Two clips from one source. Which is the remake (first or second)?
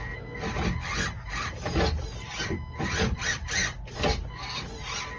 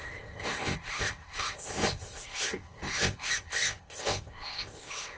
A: second